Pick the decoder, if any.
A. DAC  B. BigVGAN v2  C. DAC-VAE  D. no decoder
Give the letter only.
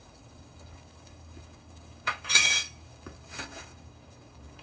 A